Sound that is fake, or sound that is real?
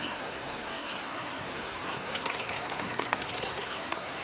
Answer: fake